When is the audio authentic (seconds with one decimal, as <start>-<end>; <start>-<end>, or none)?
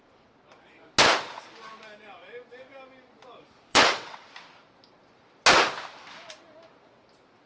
0.0-3.7; 4.3-7.5